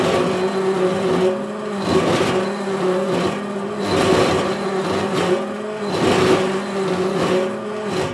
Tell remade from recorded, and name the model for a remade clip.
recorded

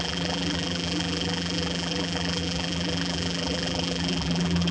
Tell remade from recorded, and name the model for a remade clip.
remade, vocoder, BigVGAN v2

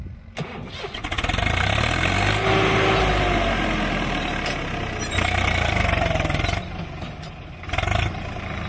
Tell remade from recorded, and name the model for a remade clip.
recorded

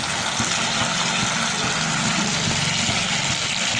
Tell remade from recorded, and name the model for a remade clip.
recorded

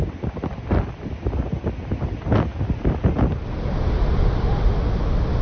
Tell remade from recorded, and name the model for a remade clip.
recorded